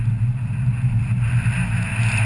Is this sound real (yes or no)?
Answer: yes